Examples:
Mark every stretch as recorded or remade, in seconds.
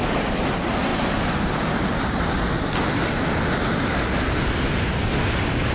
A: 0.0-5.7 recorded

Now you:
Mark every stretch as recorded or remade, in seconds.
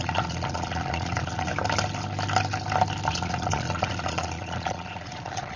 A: 0.0-1.5 remade; 1.5-3.1 recorded; 3.1-5.6 remade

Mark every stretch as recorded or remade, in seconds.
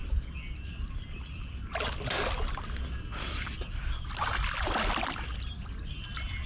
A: 0.0-6.5 recorded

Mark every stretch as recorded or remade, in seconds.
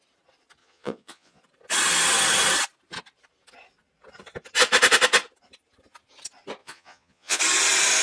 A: 0.0-0.6 recorded; 0.6-1.4 remade; 1.4-6.6 recorded; 6.6-7.4 remade; 7.4-8.0 recorded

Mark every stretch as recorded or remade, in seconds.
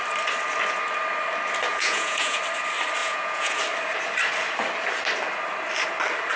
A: 0.0-1.7 recorded; 1.7-2.4 remade; 2.4-3.0 recorded; 3.0-3.6 remade; 3.6-6.4 recorded